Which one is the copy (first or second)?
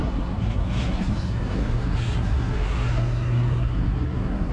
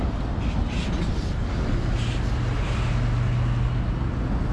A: first